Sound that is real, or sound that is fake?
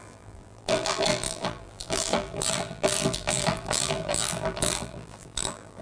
fake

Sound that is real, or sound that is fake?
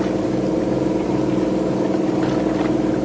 real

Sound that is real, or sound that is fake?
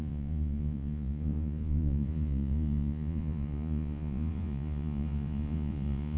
fake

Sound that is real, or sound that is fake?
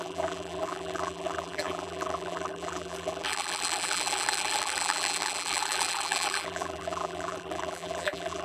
fake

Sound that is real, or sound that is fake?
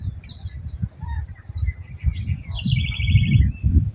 real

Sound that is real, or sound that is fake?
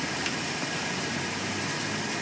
real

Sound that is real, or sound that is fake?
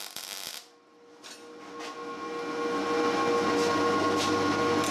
real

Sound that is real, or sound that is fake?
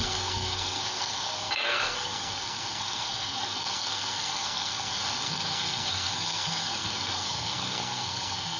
fake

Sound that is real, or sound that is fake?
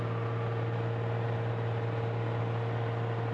real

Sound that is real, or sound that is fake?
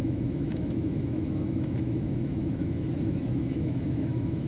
fake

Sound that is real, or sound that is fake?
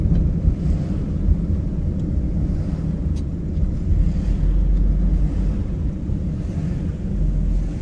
real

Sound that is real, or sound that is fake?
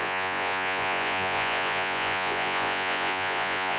fake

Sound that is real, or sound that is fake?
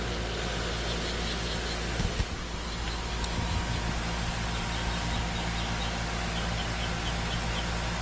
real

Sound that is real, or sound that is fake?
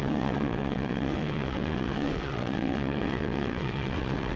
fake